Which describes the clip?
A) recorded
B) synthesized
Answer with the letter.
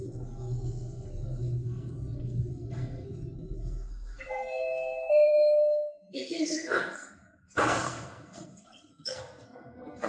B